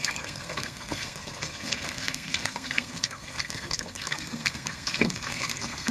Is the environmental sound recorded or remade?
remade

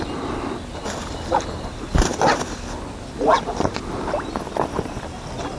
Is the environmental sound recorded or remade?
recorded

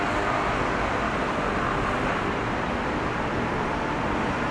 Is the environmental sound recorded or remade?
recorded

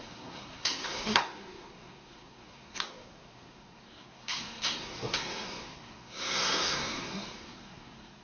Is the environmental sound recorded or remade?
remade